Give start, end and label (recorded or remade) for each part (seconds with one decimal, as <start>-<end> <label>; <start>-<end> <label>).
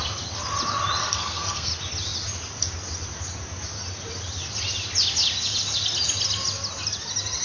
0.0-1.0 recorded; 1.0-1.7 remade; 1.7-7.4 recorded